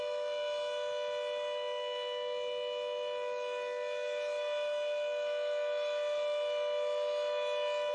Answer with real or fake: real